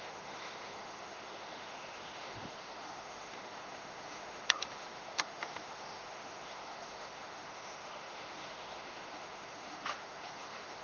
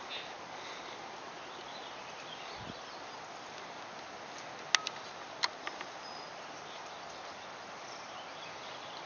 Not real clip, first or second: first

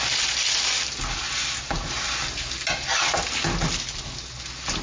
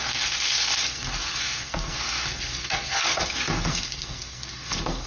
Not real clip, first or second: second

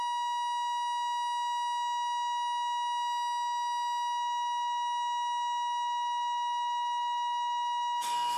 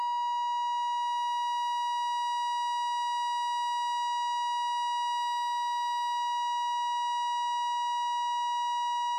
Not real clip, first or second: first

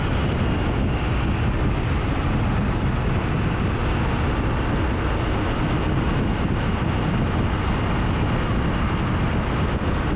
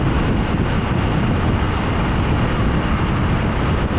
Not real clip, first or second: second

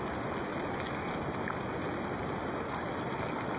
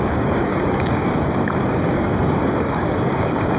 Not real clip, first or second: second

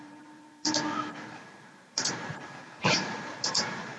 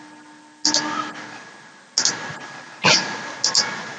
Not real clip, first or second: first